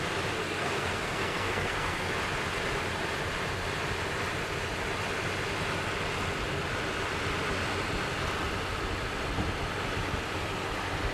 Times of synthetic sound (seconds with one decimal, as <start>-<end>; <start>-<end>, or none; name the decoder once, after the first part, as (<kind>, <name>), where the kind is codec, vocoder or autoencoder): 0.4-2.1 (codec, SNAC)

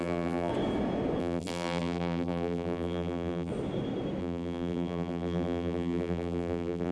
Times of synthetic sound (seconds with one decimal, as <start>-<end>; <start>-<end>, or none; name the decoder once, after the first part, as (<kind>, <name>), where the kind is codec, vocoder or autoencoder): 0.0-0.5 (vocoder, BigVGAN v2); 1.2-3.5; 4.2-6.9

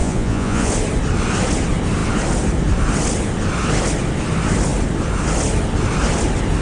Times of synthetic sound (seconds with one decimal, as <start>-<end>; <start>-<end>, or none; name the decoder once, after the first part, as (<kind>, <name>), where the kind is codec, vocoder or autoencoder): 0.0-0.7 (vocoder, Vocos)

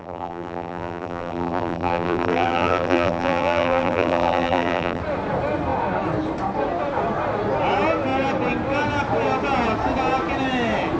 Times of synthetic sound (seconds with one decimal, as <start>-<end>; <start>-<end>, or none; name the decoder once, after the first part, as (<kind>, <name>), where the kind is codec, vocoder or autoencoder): 0.0-5.0 (vocoder, BigVGAN v2)

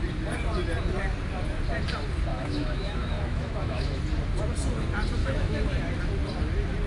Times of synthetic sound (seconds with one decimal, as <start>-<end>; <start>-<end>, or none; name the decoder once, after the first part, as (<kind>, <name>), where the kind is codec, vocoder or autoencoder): 2.3-4.0 (autoencoder, DAC-VAE); 5.2-5.7